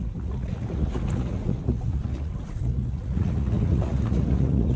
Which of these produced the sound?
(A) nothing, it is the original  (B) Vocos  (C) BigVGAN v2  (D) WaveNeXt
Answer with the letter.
B